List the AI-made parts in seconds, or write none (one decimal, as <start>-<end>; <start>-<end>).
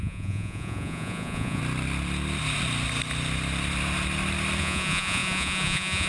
0.0-1.6; 4.6-6.1